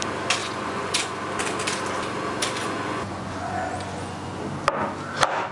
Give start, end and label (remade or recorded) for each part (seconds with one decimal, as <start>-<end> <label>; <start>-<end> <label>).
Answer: 0.0-0.4 recorded; 0.4-1.2 remade; 1.2-2.6 recorded; 2.6-4.4 remade; 4.4-5.5 recorded